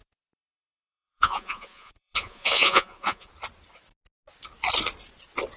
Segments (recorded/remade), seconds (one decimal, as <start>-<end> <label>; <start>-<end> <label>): 0.0-3.3 remade; 3.3-5.6 recorded

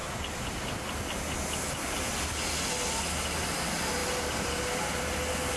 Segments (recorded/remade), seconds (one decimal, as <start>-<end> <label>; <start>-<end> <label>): 0.0-4.0 recorded; 4.0-4.6 remade; 4.6-5.6 recorded

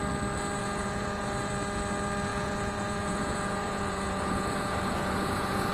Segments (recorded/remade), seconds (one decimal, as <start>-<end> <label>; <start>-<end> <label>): 0.0-0.6 recorded; 0.6-1.5 remade; 1.5-2.3 recorded; 2.3-5.7 remade